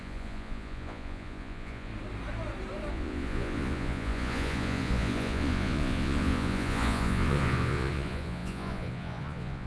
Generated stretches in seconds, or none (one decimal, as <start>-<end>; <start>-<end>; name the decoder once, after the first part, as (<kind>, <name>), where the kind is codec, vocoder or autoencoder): 0.0-1.9 (vocoder, Vocos); 2.9-9.7